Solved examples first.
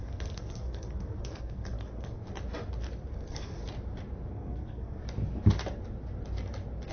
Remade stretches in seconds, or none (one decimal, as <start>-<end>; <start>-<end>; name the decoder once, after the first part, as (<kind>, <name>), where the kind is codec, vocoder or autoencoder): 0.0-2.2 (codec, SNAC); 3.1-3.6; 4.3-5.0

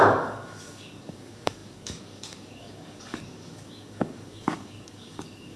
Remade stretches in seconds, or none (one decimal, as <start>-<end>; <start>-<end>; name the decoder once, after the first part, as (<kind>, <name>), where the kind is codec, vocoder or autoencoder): 0.0-5.6 (codec, DAC)

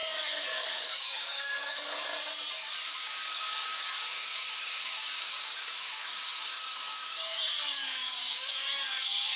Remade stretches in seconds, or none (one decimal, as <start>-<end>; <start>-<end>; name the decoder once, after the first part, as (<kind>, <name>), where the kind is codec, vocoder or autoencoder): 0.0-2.1 (codec, DAC); 2.9-9.4